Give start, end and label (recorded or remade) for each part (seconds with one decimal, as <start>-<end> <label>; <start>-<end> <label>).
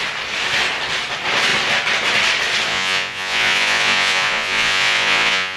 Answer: 0.0-2.7 recorded; 2.7-5.6 remade